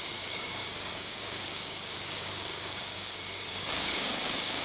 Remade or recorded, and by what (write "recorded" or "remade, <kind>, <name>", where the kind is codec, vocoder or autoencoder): remade, codec, DAC